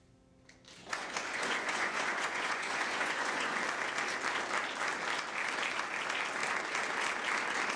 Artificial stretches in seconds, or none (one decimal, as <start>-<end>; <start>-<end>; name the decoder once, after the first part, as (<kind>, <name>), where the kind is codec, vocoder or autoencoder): 0.8-3.6 (vocoder, Vocos)